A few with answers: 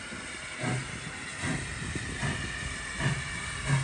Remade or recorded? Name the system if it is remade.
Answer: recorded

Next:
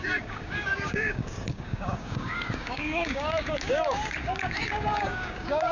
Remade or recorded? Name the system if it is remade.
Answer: remade, codec, DAC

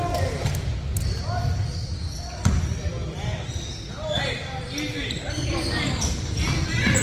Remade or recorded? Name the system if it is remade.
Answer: recorded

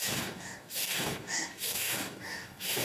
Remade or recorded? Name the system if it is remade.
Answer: remade, codec, DAC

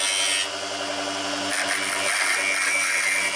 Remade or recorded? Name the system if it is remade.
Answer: recorded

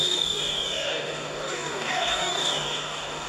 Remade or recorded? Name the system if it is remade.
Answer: remade, codec, DAC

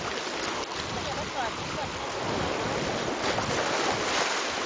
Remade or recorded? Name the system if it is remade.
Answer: recorded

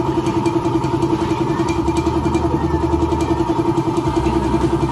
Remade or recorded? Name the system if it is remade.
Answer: recorded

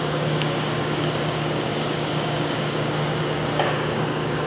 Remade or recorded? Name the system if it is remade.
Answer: remade, codec, DAC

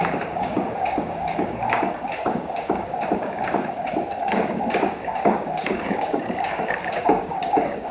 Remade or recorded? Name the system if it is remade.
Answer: remade, codec, DAC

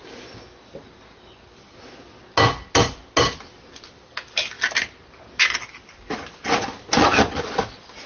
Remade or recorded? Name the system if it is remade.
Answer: recorded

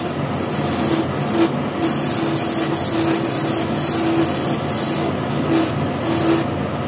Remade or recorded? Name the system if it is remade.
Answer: recorded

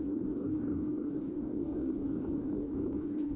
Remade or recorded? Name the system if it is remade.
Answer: remade, codec, DAC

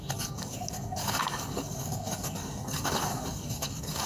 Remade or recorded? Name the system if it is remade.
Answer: remade, codec, DAC